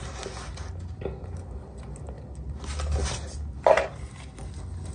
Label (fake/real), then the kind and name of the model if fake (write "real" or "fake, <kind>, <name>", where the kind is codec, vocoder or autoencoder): real